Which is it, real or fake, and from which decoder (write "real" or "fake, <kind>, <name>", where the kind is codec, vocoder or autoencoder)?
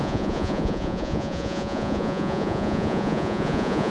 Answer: fake, vocoder, Vocos